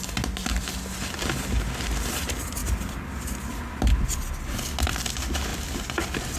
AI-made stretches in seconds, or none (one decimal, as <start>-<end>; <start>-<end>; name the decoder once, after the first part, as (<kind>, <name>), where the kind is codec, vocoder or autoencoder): 2.6-3.6 (vocoder, BigVGAN v2); 5.5-6.4

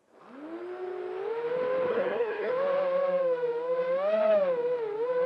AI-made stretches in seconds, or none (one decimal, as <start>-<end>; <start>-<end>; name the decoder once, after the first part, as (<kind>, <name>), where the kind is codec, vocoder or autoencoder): 1.9-2.5 (codec, SNAC)

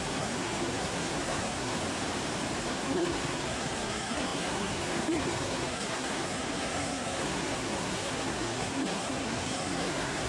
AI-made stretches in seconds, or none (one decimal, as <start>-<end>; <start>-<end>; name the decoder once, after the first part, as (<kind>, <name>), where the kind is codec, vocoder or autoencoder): 0.0-1.8 (codec, SNAC); 2.6-10.3

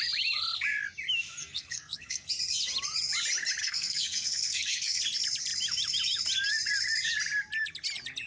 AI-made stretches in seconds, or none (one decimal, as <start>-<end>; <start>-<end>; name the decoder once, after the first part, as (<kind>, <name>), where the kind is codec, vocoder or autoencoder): 1.4-2.3 (codec, SNAC); 3.6-5.0

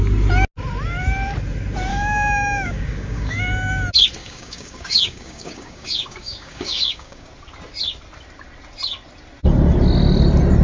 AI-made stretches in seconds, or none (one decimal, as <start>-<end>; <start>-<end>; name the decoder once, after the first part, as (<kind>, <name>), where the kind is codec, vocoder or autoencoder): 1.9-3.4 (codec, DAC); 4.2-7.3

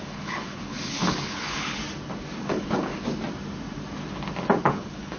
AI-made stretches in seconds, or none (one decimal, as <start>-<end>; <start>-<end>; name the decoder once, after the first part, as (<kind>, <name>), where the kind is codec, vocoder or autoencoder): 0.0-1.8 (codec, HILCodec); 2.4-2.9; 4.6-5.2

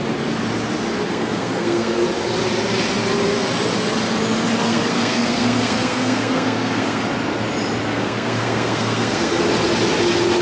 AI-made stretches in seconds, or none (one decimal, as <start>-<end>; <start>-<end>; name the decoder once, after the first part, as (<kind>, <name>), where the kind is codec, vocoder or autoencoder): 1.1-2.0 (codec, SNAC); 4.6-7.0; 7.9-9.4

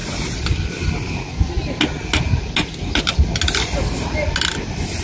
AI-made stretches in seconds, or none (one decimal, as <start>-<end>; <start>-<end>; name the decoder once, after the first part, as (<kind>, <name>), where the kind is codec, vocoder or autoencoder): none